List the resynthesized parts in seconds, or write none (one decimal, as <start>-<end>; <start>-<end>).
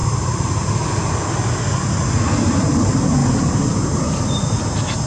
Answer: 0.0-1.0; 3.2-4.1